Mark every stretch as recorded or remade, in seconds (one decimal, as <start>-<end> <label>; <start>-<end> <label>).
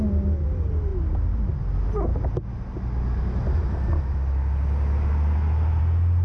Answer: 0.0-6.2 recorded